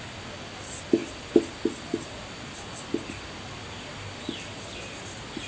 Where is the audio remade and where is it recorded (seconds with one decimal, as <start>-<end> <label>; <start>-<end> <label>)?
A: 0.0-5.5 recorded